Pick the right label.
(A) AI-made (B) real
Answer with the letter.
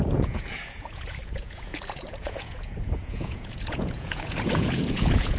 A